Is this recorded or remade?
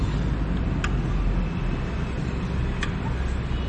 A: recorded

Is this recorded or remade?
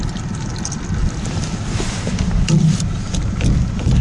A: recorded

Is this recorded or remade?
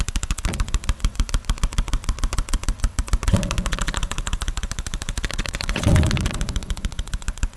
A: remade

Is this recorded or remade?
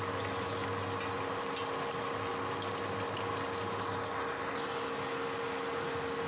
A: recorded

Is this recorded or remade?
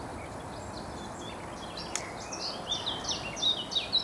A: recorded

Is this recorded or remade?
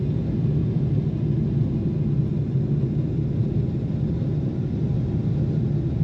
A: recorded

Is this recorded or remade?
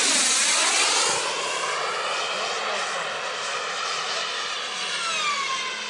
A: recorded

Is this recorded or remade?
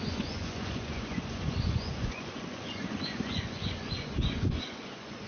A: remade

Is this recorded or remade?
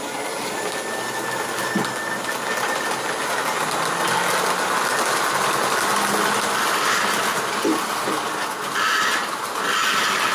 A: recorded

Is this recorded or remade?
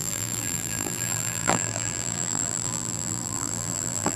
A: remade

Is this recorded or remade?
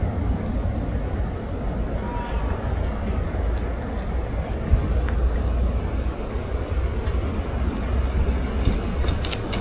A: recorded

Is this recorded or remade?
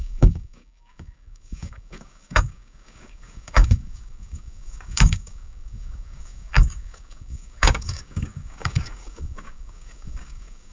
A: remade